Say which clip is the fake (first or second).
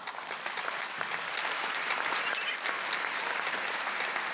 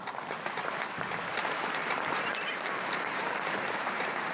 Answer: second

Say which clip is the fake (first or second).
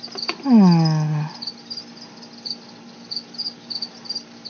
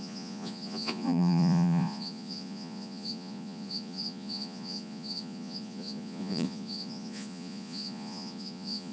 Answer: second